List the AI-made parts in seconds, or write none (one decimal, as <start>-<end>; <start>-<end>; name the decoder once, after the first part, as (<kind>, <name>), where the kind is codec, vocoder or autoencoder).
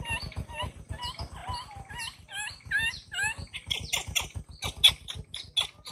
none